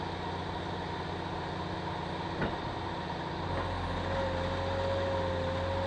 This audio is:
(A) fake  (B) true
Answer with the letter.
B